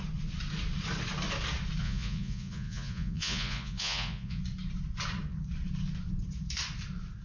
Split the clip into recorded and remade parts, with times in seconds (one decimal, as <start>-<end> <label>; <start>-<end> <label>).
0.0-1.8 recorded; 1.8-4.4 remade; 4.4-7.2 recorded